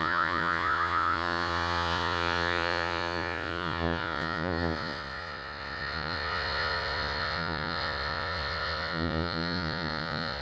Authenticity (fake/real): fake